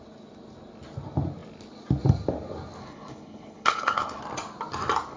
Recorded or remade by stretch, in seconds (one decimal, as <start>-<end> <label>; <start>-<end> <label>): 0.0-2.8 recorded; 2.8-4.2 remade; 4.2-5.2 recorded

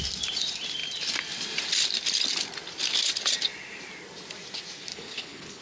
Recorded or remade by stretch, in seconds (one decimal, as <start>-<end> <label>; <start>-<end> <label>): 0.0-4.9 recorded; 4.9-5.6 remade